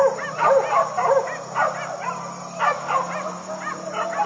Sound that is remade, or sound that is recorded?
recorded